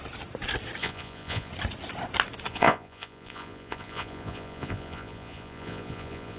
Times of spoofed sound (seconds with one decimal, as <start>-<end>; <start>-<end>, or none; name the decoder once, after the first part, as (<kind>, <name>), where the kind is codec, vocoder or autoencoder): 0.8-1.5 (vocoder, Vocos); 2.5-6.4